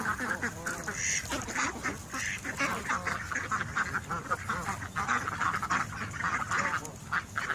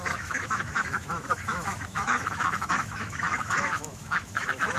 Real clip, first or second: first